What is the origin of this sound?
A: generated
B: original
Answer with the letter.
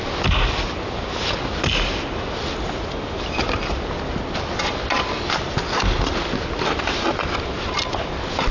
B